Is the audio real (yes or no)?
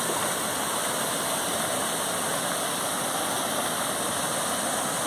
yes